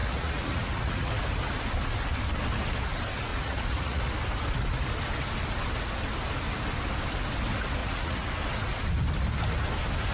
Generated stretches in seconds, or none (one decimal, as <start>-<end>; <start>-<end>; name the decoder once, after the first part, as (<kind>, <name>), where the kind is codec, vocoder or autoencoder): 0.0-1.1 (vocoder, Vocos); 3.3-4.0; 7.8-8.3